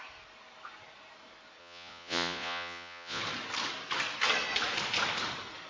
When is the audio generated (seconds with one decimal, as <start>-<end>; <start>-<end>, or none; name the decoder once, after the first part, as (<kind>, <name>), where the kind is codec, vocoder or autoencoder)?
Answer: 1.6-3.2 (vocoder, Vocos)